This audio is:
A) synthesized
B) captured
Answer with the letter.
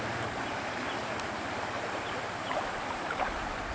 B